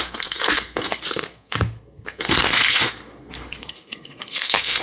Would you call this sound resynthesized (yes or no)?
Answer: yes